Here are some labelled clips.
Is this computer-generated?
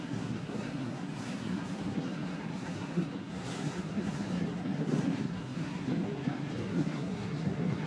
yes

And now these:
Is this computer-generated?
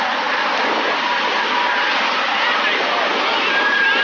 no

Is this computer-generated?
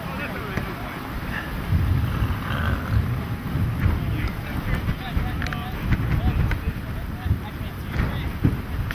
no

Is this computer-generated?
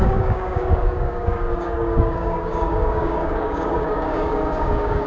yes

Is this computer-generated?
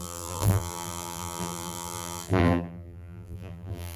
yes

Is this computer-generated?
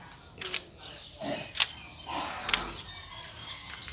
no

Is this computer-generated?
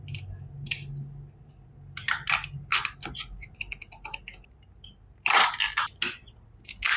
no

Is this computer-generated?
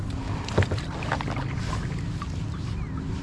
no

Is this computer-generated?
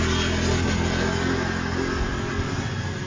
no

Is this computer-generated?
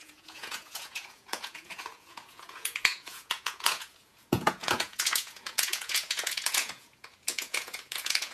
yes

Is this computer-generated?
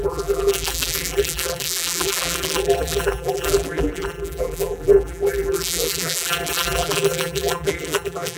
yes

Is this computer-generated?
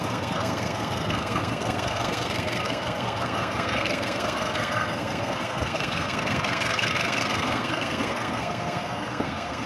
yes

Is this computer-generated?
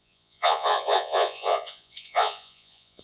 yes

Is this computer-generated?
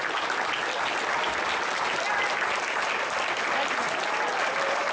no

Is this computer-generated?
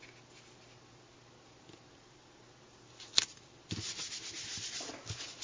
no